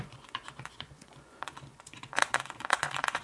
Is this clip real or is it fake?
fake